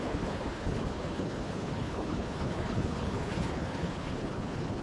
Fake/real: fake